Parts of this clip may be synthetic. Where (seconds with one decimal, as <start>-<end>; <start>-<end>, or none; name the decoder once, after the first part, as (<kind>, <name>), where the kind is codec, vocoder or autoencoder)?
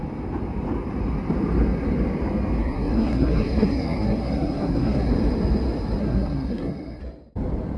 2.6-5.1 (codec, SNAC); 6.0-7.0